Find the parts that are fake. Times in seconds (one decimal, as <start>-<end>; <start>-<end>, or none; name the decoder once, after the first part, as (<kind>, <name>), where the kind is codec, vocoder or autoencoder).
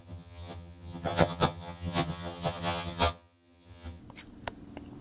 0.0-4.0 (vocoder, HiFi-GAN)